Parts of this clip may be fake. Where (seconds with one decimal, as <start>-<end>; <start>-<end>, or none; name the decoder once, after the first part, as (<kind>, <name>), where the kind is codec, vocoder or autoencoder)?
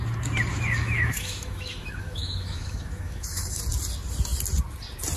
0.5-3.6 (autoencoder, DAC-VAE)